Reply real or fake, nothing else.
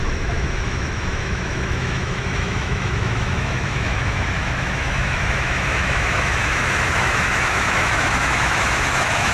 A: fake